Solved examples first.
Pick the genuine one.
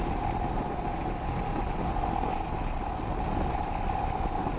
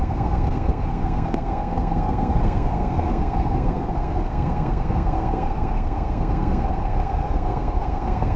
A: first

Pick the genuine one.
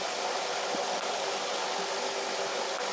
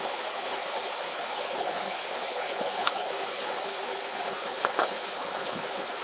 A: first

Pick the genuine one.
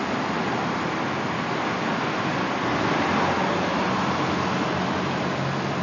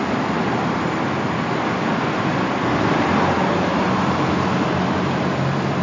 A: first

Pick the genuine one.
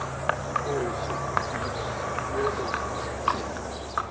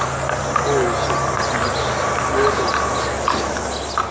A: second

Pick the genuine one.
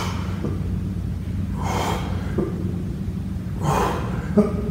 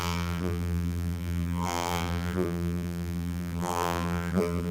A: first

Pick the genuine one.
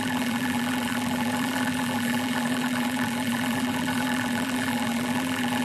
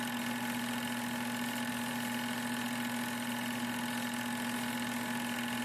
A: second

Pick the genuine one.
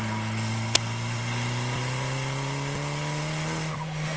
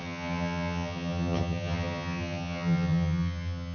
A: first